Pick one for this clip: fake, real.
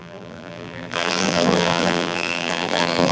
fake